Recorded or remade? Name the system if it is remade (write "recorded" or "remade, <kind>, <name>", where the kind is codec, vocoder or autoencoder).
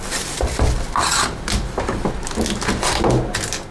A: recorded